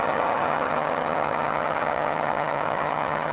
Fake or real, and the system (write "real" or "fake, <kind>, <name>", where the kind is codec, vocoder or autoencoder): fake, vocoder, HiFi-GAN